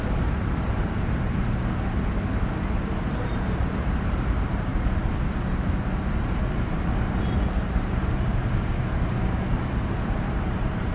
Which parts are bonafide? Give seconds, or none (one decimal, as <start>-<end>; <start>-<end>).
0.8-3.1; 4.7-6.5